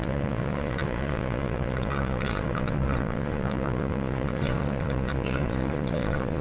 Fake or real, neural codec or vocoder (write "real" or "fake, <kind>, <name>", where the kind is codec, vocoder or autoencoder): fake, vocoder, Vocos